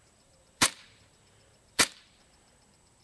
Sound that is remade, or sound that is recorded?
remade